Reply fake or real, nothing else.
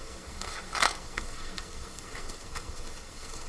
fake